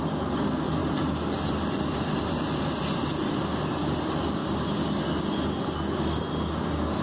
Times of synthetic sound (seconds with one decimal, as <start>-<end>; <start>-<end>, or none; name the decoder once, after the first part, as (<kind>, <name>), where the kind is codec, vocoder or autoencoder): 0.8-2.8 (vocoder, BigVGAN v2)